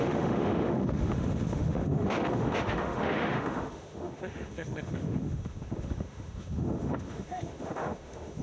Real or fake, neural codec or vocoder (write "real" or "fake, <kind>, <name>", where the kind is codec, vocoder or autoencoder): fake, autoencoder, DAC-VAE